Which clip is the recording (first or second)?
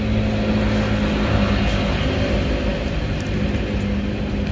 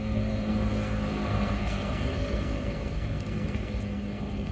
first